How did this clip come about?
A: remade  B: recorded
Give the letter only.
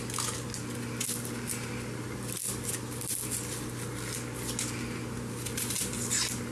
B